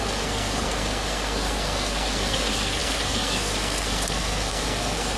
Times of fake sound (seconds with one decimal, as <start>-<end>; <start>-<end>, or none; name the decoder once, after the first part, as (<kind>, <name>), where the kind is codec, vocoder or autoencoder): 0.0-5.2 (codec, SNAC)